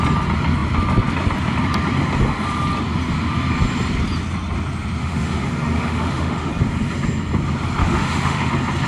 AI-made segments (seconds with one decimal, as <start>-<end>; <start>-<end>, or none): 5.0-6.5; 7.8-8.5